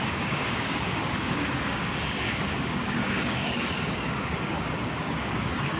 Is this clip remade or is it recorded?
remade